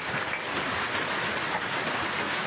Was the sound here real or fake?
real